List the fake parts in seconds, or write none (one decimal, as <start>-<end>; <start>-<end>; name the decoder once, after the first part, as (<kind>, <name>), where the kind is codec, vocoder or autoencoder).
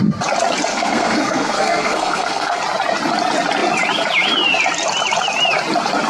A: 0.7-2.6 (codec, SNAC)